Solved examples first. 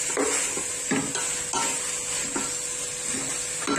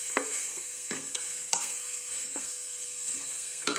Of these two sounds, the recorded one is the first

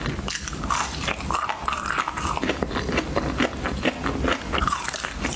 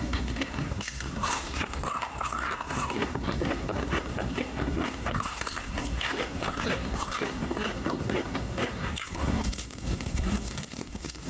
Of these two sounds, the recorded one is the first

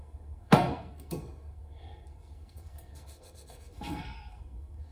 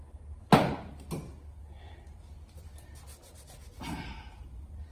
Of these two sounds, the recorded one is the second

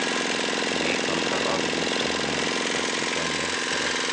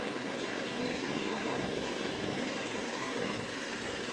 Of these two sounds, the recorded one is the first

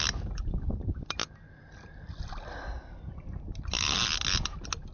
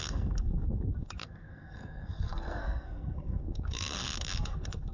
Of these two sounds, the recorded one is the first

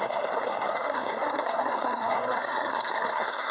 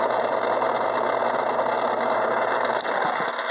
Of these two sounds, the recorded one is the second